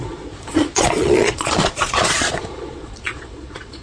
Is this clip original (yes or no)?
no